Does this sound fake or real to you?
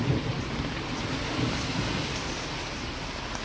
real